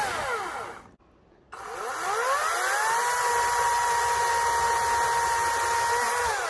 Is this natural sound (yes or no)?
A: yes